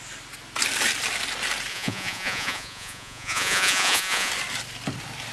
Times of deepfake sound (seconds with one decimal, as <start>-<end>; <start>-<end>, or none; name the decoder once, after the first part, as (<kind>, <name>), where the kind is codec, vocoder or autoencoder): 1.7-4.3 (vocoder, Vocos)